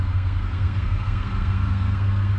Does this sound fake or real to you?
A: fake